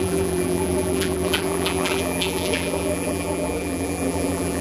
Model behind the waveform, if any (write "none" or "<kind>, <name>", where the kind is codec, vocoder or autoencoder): vocoder, BigVGAN v2